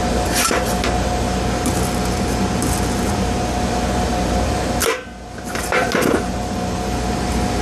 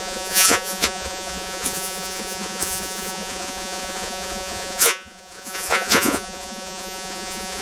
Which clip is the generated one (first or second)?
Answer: second